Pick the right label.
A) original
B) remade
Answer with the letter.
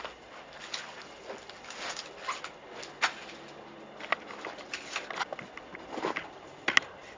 A